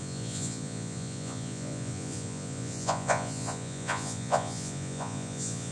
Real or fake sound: fake